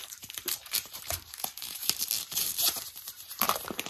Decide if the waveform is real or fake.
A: fake